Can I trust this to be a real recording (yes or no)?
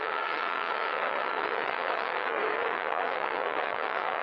no